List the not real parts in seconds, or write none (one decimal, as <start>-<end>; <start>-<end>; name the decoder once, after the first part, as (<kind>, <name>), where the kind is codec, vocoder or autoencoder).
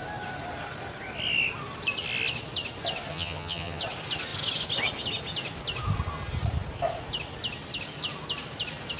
3.1-3.8 (vocoder, HiFi-GAN)